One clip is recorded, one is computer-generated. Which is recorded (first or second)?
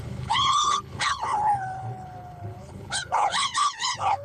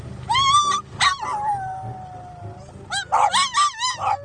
second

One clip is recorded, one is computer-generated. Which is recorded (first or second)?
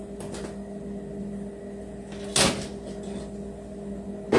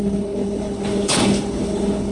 first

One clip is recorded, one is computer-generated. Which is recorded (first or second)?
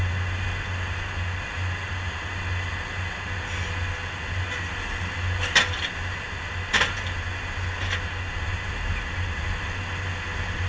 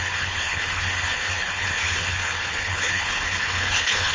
first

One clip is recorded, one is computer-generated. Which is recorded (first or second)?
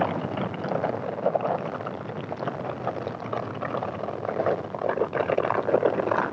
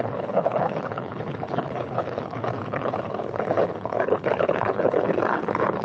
first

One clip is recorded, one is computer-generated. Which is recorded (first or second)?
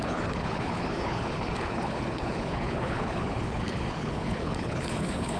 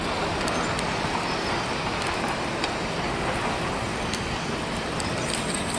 second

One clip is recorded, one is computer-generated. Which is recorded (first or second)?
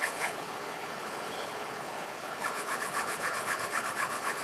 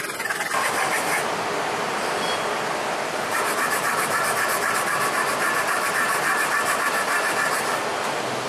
second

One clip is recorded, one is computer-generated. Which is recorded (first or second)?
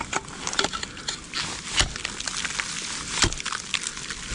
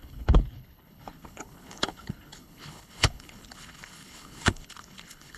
first